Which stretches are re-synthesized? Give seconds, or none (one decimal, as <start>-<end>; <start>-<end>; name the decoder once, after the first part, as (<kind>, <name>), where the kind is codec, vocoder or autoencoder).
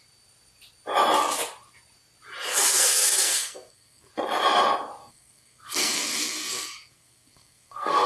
2.5-4.1 (codec, SNAC); 5.0-8.1